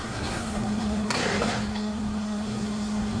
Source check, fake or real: fake